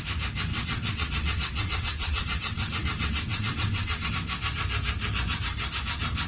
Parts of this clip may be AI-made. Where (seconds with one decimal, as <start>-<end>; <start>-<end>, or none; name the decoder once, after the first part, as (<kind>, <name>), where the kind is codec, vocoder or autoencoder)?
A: 0.5-4.1 (vocoder, WaveNeXt)